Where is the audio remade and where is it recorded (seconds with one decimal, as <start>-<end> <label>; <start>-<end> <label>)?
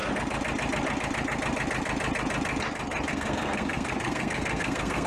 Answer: 0.0-3.1 recorded; 3.1-5.1 remade